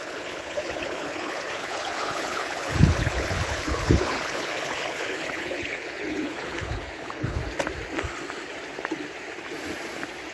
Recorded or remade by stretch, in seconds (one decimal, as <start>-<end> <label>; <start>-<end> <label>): 0.0-7.4 remade; 7.4-10.3 recorded